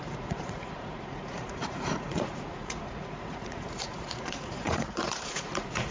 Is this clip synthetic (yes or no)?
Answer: yes